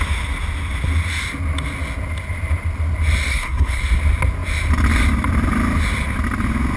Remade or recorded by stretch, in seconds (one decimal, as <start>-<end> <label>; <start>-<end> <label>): 0.0-3.3 recorded; 3.3-3.8 remade; 3.8-6.8 recorded